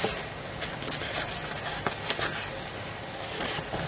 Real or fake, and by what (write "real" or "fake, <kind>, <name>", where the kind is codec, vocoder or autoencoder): real